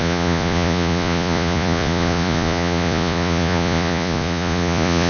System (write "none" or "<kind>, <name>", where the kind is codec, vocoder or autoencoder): vocoder, Vocos